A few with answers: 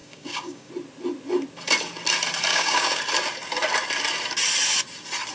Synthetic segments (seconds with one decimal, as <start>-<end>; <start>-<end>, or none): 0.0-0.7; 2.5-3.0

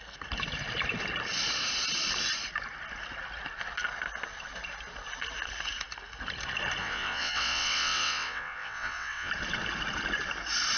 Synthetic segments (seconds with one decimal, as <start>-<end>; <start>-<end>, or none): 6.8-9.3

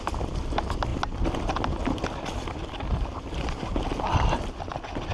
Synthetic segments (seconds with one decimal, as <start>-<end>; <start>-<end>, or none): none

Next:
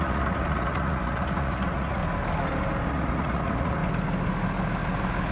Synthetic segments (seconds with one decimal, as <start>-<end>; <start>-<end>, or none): 0.0-2.0; 2.9-3.8